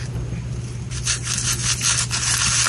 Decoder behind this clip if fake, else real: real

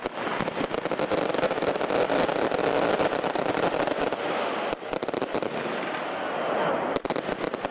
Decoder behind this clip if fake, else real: real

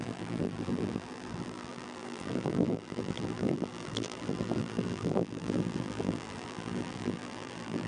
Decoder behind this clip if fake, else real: fake, vocoder, BigVGAN v2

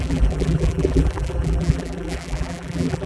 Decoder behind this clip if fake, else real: fake, vocoder, BigVGAN v2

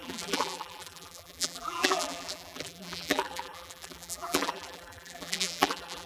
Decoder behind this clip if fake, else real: fake, vocoder, BigVGAN v2